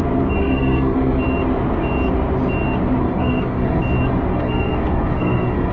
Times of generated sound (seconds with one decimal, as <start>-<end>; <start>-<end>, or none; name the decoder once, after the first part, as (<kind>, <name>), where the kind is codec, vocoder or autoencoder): 0.4-1.2 (codec, SNAC); 3.0-3.8; 4.3-5.7